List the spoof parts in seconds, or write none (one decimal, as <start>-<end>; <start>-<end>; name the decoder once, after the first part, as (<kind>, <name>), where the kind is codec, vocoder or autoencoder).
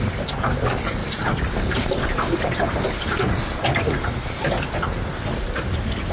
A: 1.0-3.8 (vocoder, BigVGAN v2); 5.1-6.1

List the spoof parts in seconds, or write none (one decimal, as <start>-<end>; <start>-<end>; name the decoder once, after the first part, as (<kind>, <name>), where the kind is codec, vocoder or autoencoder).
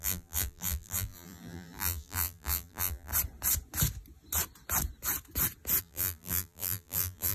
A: 0.0-3.1 (vocoder, BigVGAN v2); 5.8-7.3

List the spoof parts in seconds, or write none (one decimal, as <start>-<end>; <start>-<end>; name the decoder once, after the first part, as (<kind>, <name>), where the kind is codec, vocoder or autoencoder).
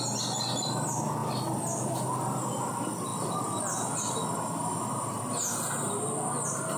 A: 1.2-2.7 (vocoder, BigVGAN v2); 3.1-5.2